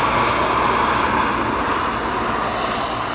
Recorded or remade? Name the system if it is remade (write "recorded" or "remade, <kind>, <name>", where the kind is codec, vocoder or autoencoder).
recorded